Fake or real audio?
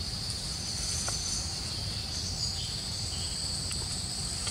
real